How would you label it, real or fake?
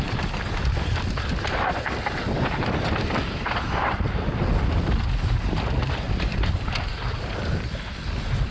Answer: real